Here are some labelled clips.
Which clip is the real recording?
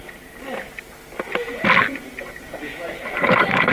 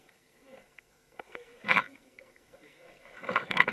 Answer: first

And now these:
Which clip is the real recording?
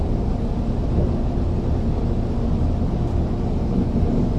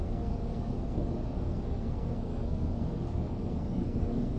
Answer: first